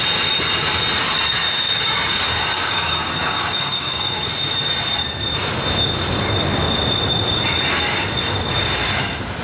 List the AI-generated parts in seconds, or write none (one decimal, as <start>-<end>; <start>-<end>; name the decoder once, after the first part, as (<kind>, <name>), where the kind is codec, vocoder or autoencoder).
1.4-4.3 (codec, DAC)

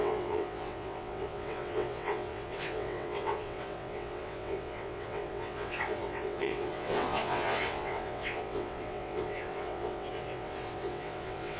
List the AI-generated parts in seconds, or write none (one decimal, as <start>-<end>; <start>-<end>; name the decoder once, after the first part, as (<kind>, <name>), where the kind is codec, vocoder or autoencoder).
0.0-11.6 (vocoder, WaveNeXt)

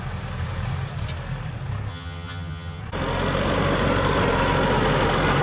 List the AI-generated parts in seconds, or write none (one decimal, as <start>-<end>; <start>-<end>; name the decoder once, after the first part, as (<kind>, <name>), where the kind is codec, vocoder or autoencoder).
1.9-2.8 (vocoder, HiFi-GAN)

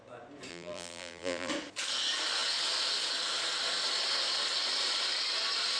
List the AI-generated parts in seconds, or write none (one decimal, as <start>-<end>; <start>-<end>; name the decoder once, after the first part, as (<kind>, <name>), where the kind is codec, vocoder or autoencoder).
0.5-1.5 (vocoder, BigVGAN v2)

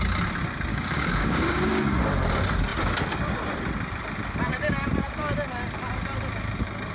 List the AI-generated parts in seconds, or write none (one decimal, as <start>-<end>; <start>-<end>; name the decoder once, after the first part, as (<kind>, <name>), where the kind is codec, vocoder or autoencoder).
0.7-2.0 (codec, DAC)

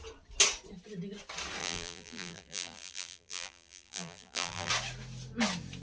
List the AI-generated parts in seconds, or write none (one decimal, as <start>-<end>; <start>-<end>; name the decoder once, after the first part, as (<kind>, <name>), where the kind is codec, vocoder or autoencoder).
1.6-4.7 (vocoder, BigVGAN v2)

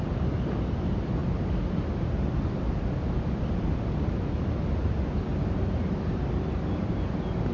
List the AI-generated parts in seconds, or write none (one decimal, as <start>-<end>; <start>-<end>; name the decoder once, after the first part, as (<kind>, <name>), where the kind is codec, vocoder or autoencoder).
none